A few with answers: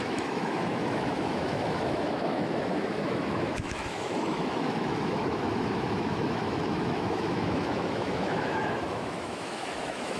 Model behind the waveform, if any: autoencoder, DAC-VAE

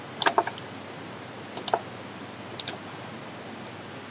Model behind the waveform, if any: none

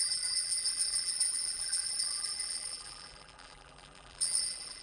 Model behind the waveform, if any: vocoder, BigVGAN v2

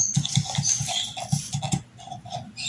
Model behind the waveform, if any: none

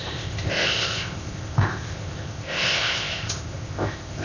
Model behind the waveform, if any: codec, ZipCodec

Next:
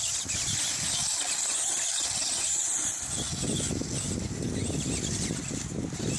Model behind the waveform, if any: none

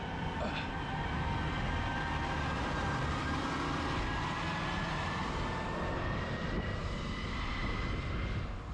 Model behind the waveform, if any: none